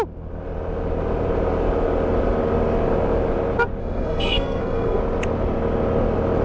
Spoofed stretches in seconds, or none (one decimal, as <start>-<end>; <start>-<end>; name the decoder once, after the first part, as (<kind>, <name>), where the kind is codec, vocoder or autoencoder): 3.8-5.0 (codec, SNAC)